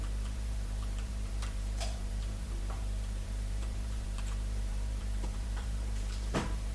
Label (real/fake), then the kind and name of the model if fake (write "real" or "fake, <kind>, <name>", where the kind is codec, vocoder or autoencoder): fake, vocoder, BigVGAN v2